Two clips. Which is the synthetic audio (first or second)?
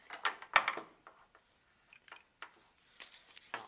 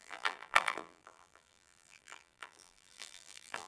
second